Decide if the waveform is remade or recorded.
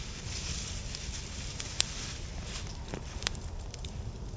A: recorded